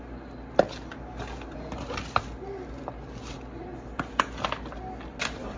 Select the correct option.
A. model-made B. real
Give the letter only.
B